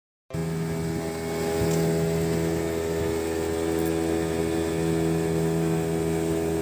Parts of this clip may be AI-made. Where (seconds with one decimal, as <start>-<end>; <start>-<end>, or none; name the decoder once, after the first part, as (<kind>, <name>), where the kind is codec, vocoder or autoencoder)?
none